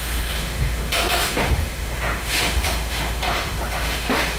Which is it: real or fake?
fake